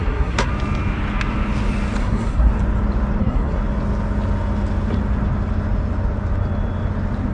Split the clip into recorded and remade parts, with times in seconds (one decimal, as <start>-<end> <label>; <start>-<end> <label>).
0.0-0.5 remade; 0.5-2.0 recorded; 2.0-2.5 remade; 2.5-3.2 recorded; 3.2-3.6 remade; 3.6-7.3 recorded